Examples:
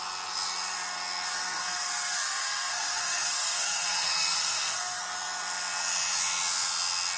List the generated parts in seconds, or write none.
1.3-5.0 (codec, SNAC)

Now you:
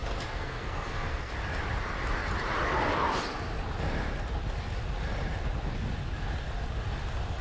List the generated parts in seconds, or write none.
0.0-1.3 (codec, SNAC)